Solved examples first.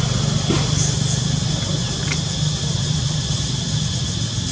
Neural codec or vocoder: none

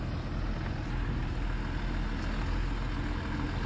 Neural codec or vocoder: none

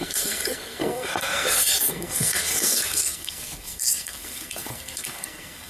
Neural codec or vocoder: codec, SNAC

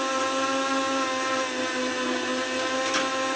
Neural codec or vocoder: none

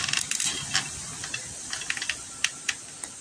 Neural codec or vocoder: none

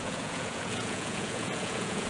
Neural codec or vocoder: vocoder, Vocos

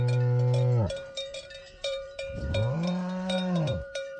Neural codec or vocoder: vocoder, BigVGAN v2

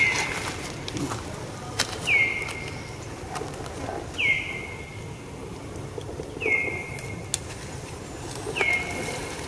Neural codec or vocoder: none